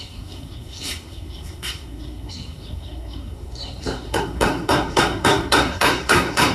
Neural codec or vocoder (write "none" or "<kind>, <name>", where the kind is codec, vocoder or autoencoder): codec, SNAC